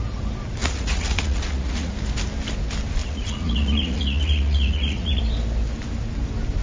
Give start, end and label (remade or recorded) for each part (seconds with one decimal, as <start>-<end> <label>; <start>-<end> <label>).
0.0-0.6 recorded; 0.6-1.9 remade; 1.9-3.0 recorded; 3.0-5.2 remade; 5.2-6.6 recorded